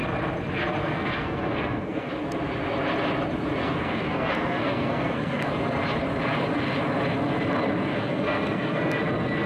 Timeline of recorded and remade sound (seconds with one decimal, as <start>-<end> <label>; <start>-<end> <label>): 0.0-0.8 recorded; 0.8-2.1 remade; 2.1-3.6 recorded; 3.6-5.5 remade; 5.5-7.9 recorded; 7.9-9.0 remade; 9.0-9.5 recorded